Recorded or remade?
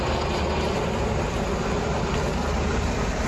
recorded